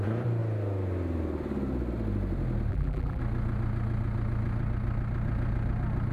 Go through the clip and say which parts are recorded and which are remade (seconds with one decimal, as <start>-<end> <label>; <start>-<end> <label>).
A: 0.0-2.7 recorded; 2.7-3.2 remade; 3.2-6.1 recorded